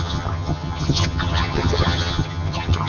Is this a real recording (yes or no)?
no